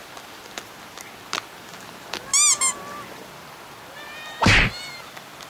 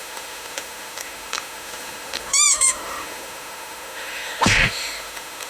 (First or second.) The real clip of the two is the first